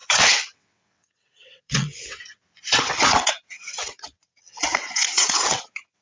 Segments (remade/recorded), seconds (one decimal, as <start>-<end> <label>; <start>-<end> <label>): 0.0-6.0 remade